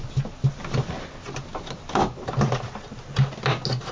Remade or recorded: recorded